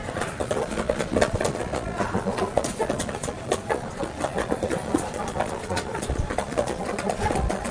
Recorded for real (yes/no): no